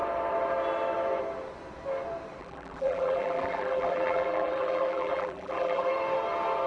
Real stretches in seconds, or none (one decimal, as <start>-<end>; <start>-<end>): 0.0-2.4; 5.9-6.7